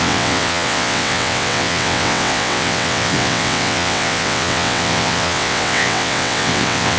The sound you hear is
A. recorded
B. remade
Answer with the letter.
B